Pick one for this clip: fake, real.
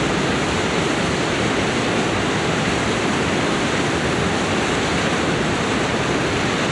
fake